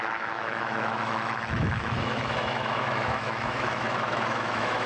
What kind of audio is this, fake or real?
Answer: fake